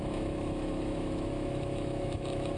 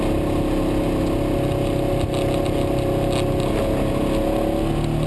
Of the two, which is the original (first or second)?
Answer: second